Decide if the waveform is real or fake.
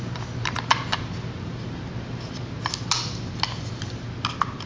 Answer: real